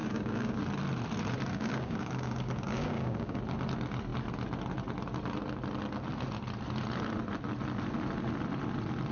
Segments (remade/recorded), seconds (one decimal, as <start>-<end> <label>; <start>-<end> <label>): 0.0-0.6 remade; 0.6-1.5 recorded; 1.5-3.4 remade; 3.4-9.1 recorded